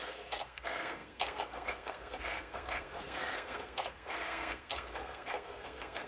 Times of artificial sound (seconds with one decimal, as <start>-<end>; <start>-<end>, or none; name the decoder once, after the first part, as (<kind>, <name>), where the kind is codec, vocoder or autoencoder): 0.0-6.1 (codec, SNAC)